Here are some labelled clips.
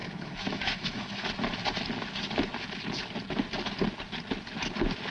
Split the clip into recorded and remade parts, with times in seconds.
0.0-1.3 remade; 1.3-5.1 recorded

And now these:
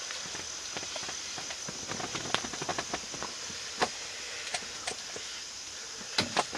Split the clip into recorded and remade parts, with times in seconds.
0.0-6.6 recorded

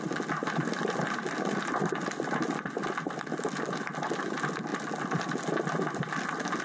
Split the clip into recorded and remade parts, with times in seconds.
0.0-0.4 recorded; 0.4-1.2 remade; 1.2-4.7 recorded; 4.7-6.6 remade

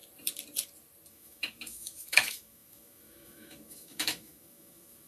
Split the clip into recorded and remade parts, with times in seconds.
0.0-1.1 recorded; 1.1-5.1 remade

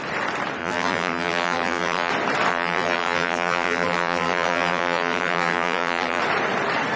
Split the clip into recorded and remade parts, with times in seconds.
0.0-0.6 recorded; 0.6-2.1 remade; 2.1-2.5 recorded; 2.5-6.2 remade; 6.2-7.0 recorded